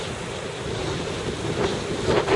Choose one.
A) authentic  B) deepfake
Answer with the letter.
A